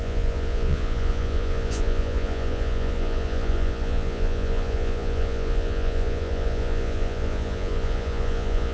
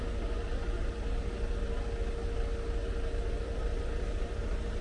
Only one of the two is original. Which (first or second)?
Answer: second